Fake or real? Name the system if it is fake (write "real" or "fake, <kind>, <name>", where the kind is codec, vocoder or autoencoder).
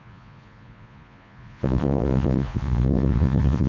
fake, vocoder, Vocos